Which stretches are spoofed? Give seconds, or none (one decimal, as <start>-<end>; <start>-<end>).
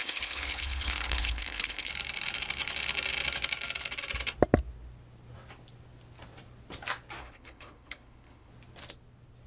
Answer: 0.0-1.9; 7.2-8.5